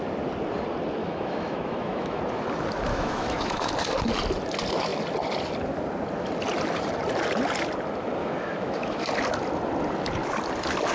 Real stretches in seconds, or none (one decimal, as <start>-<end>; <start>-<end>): 0.0-1.0; 2.2-2.9; 3.7-8.2; 9.1-10.9